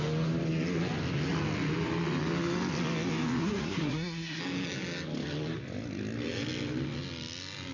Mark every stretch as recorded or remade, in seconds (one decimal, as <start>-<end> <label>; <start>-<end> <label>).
0.0-3.4 recorded; 3.4-4.4 remade; 4.4-7.7 recorded